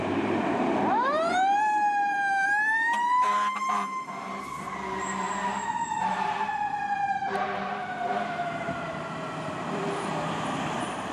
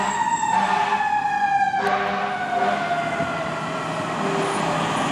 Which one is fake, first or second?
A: first